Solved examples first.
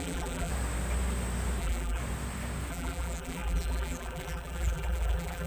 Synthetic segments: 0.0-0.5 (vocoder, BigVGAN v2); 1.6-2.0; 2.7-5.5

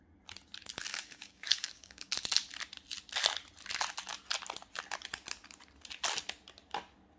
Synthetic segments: 0.9-2.1 (codec, DAC)

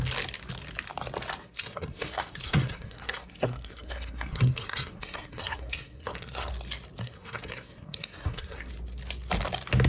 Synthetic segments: 1.4-6.5 (codec, SNAC); 7.0-8.7

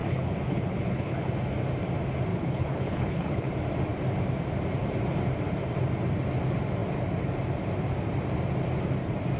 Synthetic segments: 0.0-1.3 (codec, HILCodec); 2.3-3.5

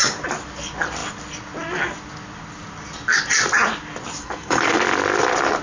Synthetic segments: 4.2-4.8 (codec, SNAC)

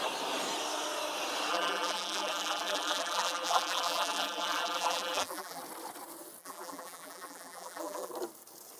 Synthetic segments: 1.5-5.6 (vocoder, BigVGAN v2); 6.4-8.1